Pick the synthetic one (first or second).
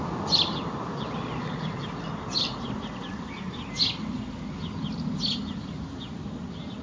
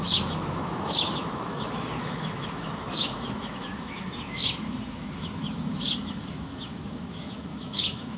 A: second